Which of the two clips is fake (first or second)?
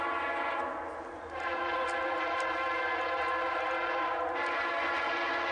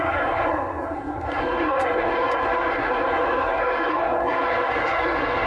second